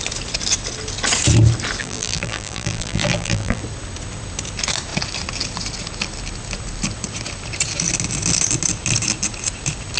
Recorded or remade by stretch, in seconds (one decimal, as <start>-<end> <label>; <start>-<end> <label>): 0.0-1.8 recorded; 1.8-3.6 remade; 3.6-10.0 recorded